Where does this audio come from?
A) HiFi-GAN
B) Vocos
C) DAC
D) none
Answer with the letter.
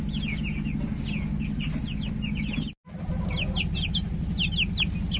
D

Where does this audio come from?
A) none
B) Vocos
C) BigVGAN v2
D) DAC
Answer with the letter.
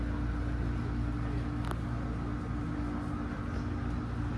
A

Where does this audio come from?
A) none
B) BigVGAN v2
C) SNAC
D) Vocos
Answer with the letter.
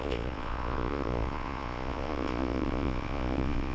D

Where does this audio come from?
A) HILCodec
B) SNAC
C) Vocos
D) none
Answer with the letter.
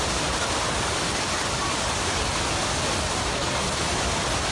D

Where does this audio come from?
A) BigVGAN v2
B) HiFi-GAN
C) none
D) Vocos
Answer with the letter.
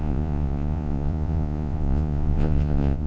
D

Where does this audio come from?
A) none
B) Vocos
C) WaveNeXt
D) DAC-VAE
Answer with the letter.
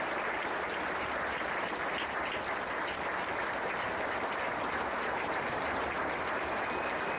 A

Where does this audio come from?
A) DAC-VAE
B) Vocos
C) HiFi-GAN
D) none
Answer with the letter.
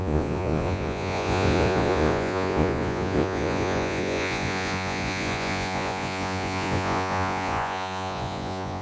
B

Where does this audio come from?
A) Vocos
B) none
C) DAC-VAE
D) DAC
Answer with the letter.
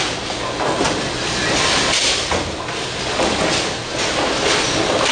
B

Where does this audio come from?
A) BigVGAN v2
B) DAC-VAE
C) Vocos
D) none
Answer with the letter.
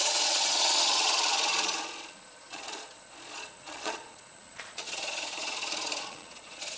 C